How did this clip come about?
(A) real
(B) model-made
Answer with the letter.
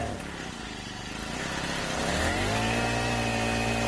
A